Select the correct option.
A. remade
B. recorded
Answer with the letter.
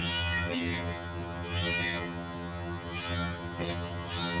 A